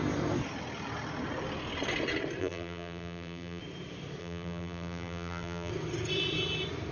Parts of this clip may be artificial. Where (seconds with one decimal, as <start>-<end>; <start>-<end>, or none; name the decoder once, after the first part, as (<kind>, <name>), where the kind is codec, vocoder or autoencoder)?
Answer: 2.4-3.6 (vocoder, BigVGAN v2); 4.2-5.7